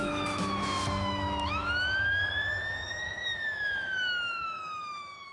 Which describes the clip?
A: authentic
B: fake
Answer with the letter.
B